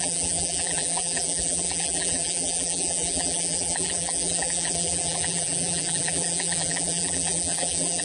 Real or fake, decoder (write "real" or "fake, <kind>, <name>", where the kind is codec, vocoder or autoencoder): fake, vocoder, BigVGAN v2